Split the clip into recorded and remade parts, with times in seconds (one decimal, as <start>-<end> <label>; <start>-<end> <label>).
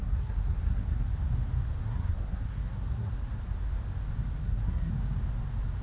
0.0-1.1 remade; 1.1-1.8 recorded; 1.8-3.1 remade; 3.1-4.4 recorded; 4.4-4.9 remade; 4.9-5.8 recorded